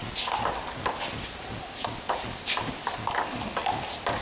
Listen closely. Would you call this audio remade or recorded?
recorded